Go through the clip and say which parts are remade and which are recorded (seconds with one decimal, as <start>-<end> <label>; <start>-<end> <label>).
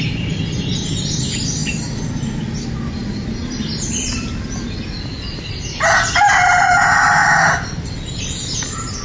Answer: 0.0-9.0 recorded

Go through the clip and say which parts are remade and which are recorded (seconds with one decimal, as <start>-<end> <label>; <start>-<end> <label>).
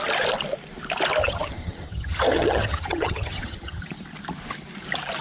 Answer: 0.0-1.2 recorded; 1.2-3.8 remade; 3.8-5.2 recorded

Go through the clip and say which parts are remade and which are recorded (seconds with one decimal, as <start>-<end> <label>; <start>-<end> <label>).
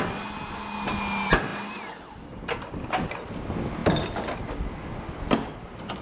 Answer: 0.0-6.0 recorded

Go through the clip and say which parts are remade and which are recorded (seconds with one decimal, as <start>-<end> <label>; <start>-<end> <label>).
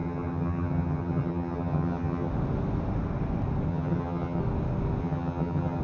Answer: 0.0-2.3 remade; 2.3-3.7 recorded; 3.7-4.4 remade; 4.4-5.0 recorded; 5.0-5.8 remade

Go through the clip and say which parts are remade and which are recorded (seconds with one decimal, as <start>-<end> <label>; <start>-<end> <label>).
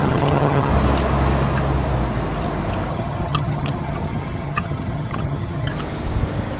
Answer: 0.0-0.7 remade; 0.7-2.9 recorded; 2.9-5.7 remade; 5.7-6.6 recorded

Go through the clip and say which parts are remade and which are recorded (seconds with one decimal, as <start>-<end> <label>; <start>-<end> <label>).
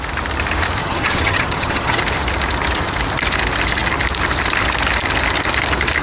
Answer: 0.0-0.8 recorded; 0.8-2.0 remade; 2.0-6.0 recorded